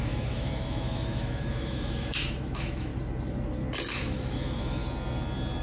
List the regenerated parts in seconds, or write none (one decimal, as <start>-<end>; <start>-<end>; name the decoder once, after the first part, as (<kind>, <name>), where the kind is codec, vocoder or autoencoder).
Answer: 0.0-2.9 (autoencoder, DAC-VAE); 3.9-4.8